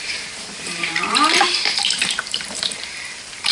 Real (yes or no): no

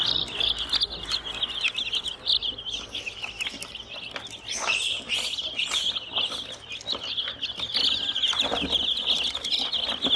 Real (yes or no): yes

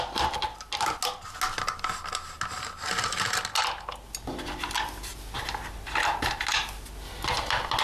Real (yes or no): yes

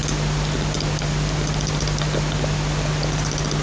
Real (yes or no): yes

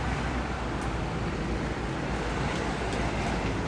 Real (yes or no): yes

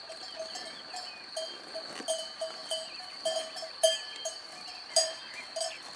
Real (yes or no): yes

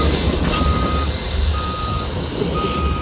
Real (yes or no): yes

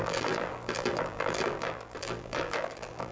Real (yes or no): no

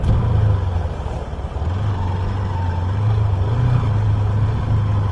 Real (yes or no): yes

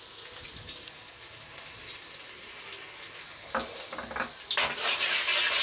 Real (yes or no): yes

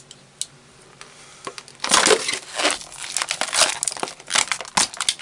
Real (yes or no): yes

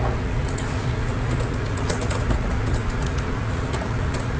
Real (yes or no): no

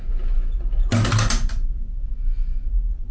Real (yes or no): yes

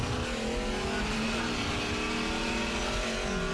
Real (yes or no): yes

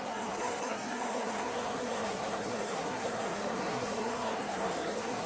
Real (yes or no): no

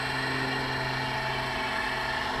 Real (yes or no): yes